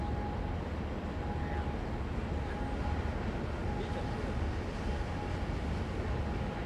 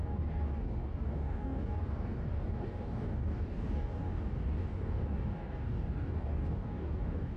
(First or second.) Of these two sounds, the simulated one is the second